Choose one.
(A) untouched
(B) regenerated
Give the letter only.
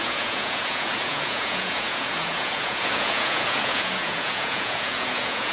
B